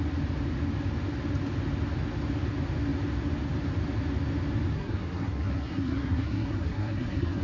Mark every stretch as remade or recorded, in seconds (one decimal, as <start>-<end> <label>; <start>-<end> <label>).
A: 0.0-4.7 recorded; 4.7-7.4 remade